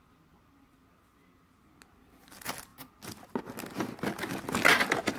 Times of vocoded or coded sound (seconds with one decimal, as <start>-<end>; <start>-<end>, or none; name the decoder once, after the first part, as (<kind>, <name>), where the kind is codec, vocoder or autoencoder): none